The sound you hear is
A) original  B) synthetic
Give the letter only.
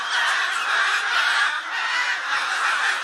A